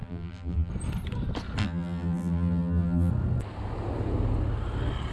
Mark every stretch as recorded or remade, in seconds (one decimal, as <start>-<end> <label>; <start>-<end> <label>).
0.0-0.7 remade; 0.7-1.6 recorded; 1.6-3.1 remade; 3.1-5.1 recorded

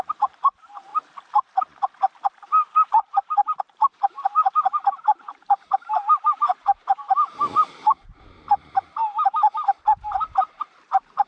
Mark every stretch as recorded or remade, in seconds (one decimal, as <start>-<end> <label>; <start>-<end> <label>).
0.0-0.9 remade; 0.9-2.3 recorded; 2.3-11.3 remade

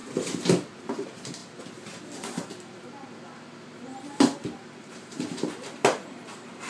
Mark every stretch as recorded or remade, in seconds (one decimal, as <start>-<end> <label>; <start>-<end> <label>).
0.0-0.8 recorded; 0.8-1.4 remade; 1.4-4.9 recorded; 4.9-6.7 remade

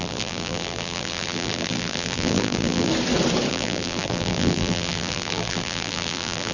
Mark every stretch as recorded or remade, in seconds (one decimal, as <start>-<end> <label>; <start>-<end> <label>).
0.0-2.9 remade; 2.9-3.5 recorded; 3.5-6.5 remade

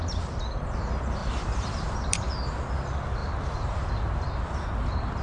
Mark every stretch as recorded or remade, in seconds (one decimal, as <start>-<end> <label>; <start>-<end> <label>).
0.0-1.2 recorded; 1.2-2.3 remade; 2.3-3.2 recorded; 3.2-4.2 remade; 4.2-5.2 recorded

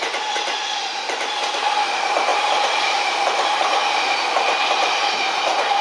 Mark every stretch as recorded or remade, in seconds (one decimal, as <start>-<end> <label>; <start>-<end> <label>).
0.0-2.3 recorded; 2.3-5.8 remade